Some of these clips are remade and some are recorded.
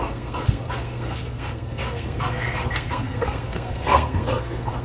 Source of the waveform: remade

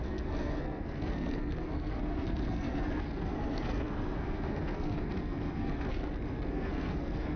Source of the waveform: remade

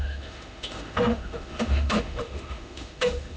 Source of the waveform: remade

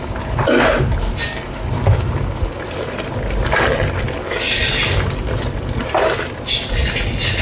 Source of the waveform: recorded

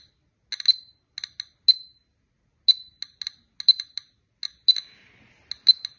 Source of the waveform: recorded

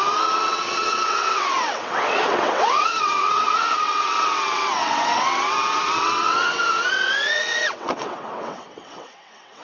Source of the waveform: remade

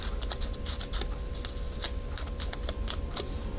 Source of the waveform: recorded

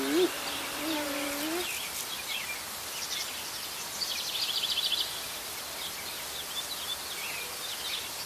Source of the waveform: recorded